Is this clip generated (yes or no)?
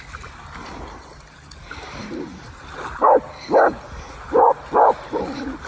no